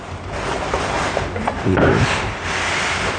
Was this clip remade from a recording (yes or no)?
no